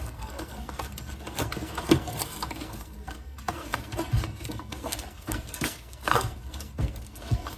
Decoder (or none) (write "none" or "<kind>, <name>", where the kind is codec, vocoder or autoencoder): codec, SNAC